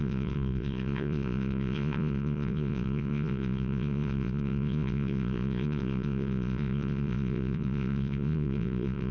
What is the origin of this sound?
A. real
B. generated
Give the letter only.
B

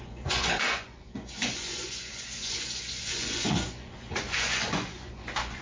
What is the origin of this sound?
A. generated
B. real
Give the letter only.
A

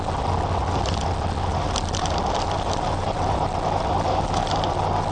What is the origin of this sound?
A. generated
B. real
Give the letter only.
B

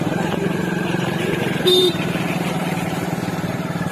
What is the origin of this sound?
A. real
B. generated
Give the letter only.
B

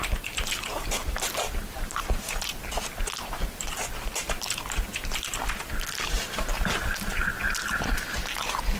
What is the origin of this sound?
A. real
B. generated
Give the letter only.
A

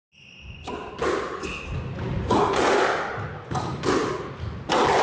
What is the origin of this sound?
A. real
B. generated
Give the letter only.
A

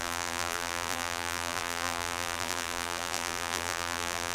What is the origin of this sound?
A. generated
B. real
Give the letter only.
A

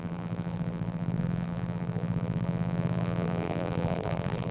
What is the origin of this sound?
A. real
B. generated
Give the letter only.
B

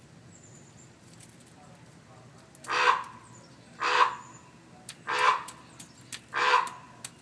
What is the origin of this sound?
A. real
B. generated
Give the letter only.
A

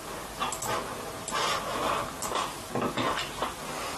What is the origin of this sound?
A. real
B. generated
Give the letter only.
A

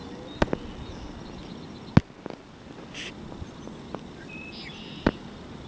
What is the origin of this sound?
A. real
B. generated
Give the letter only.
A